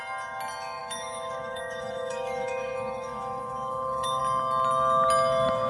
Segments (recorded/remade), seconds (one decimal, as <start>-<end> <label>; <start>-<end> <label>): 0.0-0.8 recorded; 0.8-4.2 remade; 4.2-5.7 recorded